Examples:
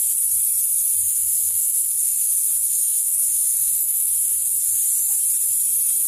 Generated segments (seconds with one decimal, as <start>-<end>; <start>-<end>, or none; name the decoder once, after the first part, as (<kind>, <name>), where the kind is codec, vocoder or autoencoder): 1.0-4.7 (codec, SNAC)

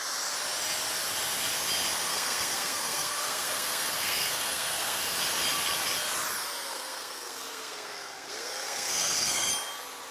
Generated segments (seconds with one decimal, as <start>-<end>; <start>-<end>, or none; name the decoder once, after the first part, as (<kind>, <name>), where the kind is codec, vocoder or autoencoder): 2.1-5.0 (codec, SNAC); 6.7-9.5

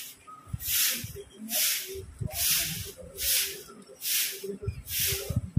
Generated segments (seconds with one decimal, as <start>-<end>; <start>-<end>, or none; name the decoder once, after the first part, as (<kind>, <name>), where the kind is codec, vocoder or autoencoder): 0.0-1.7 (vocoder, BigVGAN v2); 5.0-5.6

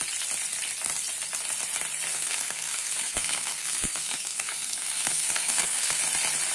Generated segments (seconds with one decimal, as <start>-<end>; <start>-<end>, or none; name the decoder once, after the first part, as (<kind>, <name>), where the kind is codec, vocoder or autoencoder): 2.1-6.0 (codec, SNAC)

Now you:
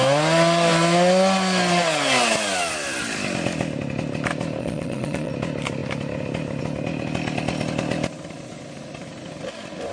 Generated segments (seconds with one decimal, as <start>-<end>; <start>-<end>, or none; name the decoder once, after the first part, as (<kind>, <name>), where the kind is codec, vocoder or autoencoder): 4.6-5.3 (vocoder, Vocos)

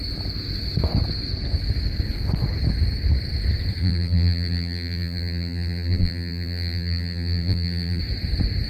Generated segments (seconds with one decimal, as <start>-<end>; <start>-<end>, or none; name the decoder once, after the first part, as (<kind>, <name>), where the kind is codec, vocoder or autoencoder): 3.8-8.0 (vocoder, BigVGAN v2)

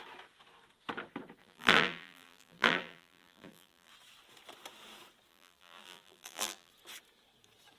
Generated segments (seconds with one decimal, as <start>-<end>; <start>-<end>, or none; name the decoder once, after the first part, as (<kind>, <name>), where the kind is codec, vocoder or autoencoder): 1.4-3.9 (vocoder, BigVGAN v2); 5.3-6.7